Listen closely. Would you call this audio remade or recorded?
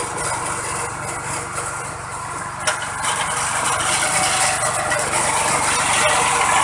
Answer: recorded